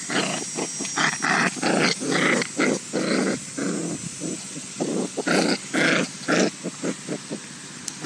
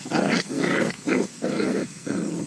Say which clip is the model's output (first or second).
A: second